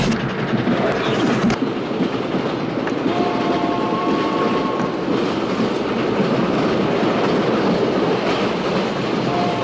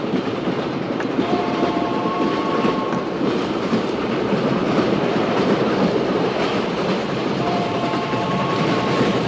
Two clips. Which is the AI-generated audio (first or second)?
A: second